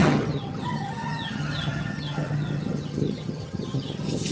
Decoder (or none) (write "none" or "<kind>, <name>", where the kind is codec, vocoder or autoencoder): vocoder, HiFi-GAN